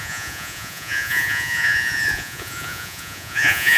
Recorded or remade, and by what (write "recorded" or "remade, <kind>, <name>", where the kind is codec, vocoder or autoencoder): remade, vocoder, Vocos